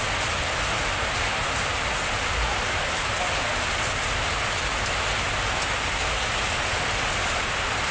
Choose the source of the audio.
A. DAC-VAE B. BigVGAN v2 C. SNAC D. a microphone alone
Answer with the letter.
D